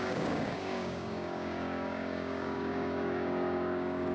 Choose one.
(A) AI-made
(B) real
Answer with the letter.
A